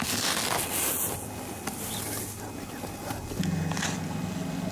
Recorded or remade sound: recorded